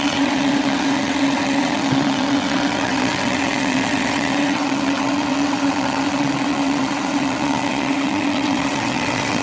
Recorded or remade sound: remade